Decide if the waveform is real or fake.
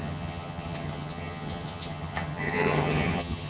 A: fake